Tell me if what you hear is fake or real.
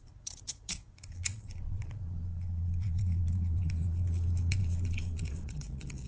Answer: fake